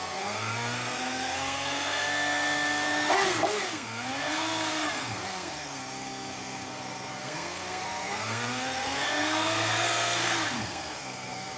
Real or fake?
fake